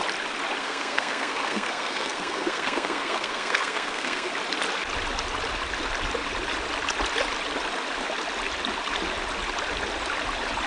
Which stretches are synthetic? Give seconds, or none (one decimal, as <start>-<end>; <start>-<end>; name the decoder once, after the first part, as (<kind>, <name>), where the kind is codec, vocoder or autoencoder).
0.6-4.3 (codec, SNAC)